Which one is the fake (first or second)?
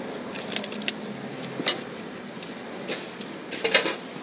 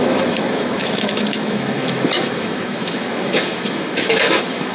second